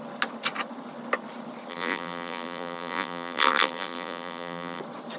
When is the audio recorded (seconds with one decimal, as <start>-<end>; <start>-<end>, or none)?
0.0-1.7; 4.8-5.2